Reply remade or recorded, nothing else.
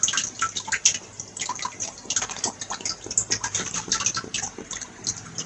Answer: recorded